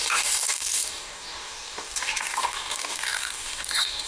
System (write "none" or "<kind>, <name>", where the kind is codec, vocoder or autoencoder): codec, DAC